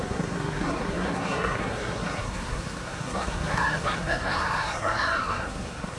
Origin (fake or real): fake